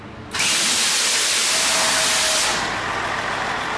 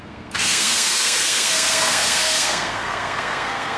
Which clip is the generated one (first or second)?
second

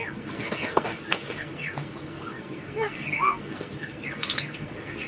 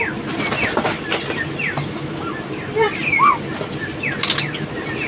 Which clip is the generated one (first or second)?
first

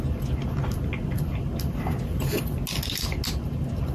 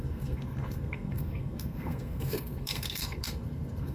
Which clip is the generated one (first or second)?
second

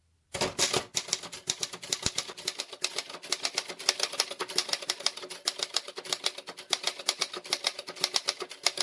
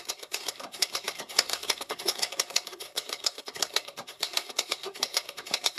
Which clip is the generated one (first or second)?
second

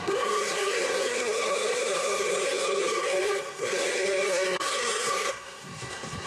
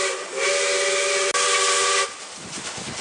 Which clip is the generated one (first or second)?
first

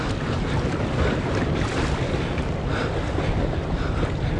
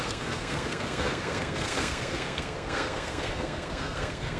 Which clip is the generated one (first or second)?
second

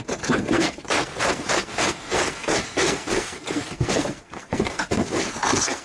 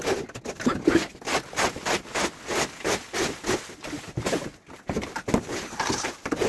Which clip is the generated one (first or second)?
first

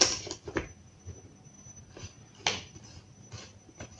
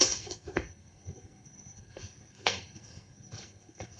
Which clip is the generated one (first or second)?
second